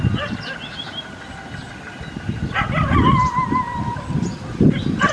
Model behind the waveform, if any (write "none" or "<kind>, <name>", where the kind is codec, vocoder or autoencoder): none